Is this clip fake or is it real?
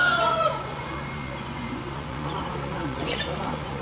fake